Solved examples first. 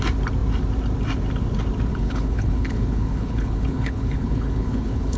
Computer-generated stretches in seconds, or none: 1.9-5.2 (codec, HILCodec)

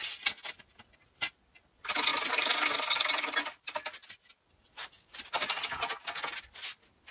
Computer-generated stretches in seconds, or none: none